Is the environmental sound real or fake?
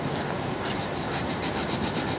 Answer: fake